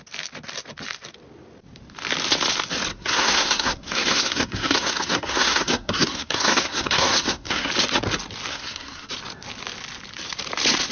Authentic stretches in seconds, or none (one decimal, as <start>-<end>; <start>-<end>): 0.0-2.9; 7.7-8.5; 9.1-10.9